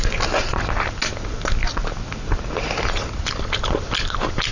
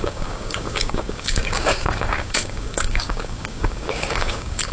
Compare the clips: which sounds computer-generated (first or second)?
second